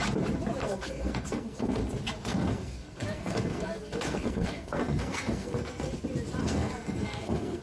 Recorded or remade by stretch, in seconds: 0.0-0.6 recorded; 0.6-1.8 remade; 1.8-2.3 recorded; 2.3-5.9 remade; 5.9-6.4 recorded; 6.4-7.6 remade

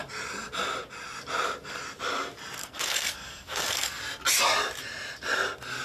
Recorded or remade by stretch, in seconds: 0.0-2.6 recorded; 2.6-4.0 remade; 4.0-5.8 recorded

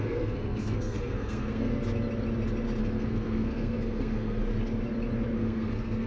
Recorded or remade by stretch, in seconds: 0.0-1.7 remade; 1.7-2.8 recorded; 2.8-4.4 remade; 4.4-5.3 recorded; 5.3-6.1 remade

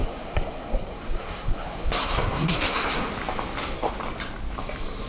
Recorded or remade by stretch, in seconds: 0.0-3.1 remade; 3.1-5.1 recorded

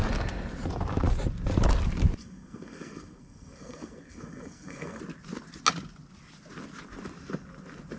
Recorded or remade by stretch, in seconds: 0.0-2.2 recorded; 2.2-5.0 remade; 5.0-8.0 recorded

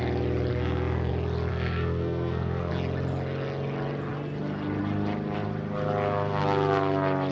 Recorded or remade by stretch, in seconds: 0.0-0.5 recorded; 0.5-1.1 remade; 1.1-1.5 recorded; 1.5-2.7 remade; 2.7-7.3 recorded